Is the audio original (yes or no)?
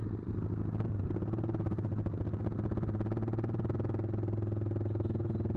yes